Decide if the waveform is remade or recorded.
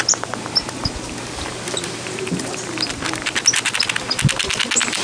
recorded